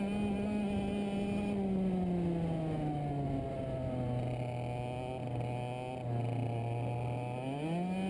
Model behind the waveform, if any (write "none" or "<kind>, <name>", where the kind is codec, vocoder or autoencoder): none